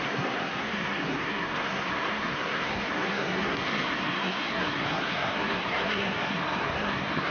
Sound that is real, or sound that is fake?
fake